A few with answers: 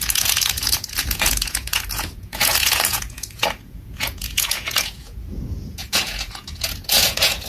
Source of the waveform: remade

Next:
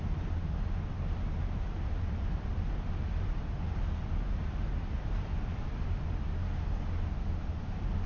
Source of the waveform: recorded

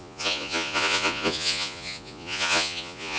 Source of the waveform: remade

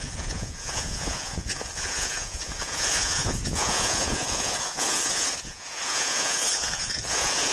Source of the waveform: remade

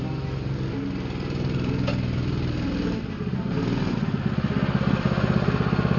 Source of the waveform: recorded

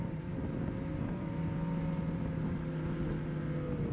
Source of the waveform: recorded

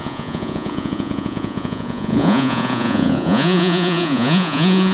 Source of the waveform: remade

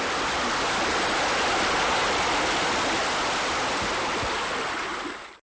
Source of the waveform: recorded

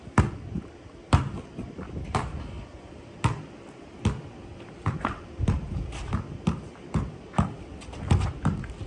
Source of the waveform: recorded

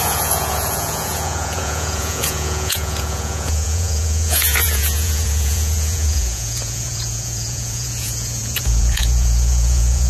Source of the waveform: remade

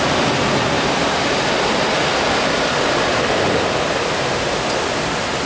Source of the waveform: recorded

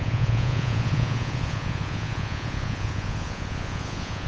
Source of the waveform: remade